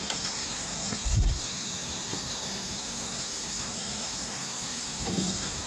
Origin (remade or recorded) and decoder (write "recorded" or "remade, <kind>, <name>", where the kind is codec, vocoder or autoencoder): remade, codec, SNAC